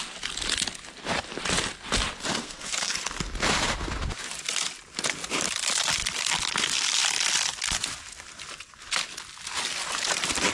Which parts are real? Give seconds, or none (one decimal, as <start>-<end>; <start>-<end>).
0.0-2.4; 2.9-10.5